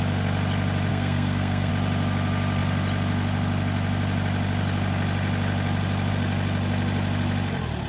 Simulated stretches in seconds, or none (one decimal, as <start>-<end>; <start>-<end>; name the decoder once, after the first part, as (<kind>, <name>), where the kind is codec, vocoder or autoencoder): 0.9-1.7 (codec, SNAC)